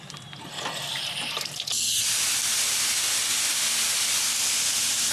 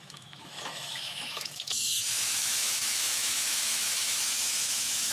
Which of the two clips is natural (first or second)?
first